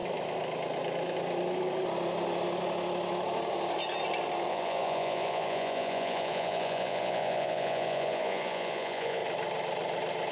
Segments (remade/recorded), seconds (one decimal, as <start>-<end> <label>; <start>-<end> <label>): 0.0-4.5 recorded; 4.5-9.2 remade; 9.2-10.3 recorded